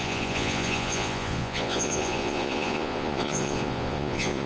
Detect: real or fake fake